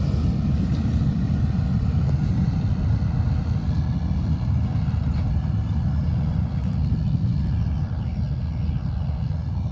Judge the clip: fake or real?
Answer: real